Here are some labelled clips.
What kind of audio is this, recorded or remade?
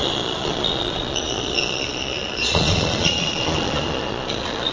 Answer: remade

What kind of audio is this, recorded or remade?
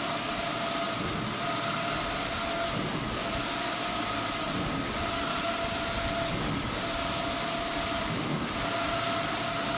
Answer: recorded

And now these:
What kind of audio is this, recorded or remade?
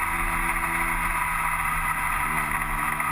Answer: recorded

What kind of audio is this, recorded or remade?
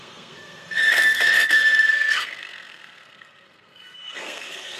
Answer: remade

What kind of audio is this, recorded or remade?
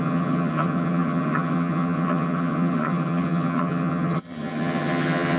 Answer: remade